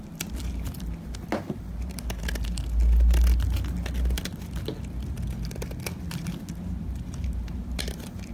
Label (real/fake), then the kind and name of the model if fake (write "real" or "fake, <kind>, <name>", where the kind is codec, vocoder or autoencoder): real